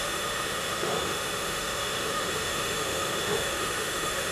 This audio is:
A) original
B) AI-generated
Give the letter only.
B